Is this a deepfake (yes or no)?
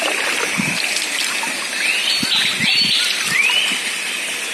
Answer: no